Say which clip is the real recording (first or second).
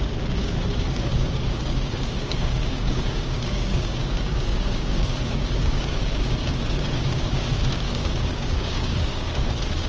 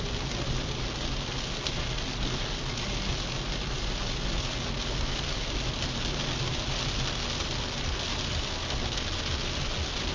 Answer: second